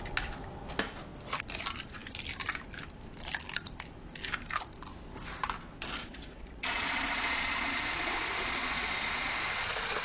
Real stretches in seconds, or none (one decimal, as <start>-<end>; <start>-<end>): 0.0-6.0; 9.3-10.0